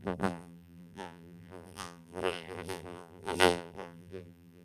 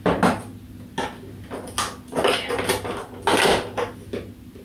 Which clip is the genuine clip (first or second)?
second